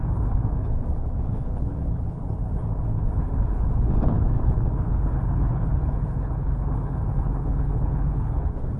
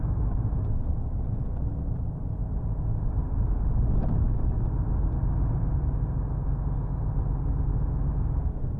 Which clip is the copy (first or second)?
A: first